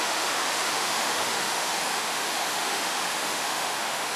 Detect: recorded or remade remade